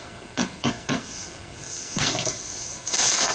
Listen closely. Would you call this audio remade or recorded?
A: remade